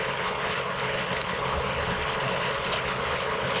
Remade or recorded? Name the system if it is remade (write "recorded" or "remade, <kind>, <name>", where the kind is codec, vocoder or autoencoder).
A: remade, codec, HILCodec